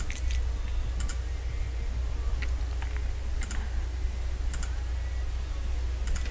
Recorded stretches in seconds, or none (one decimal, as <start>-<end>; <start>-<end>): 0.0-6.3